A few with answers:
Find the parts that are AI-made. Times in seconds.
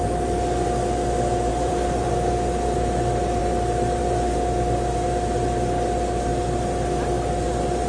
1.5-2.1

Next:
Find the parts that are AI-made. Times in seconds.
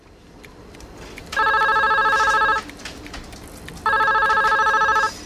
none